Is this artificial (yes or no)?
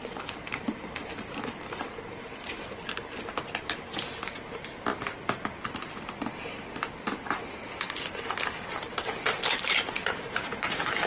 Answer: no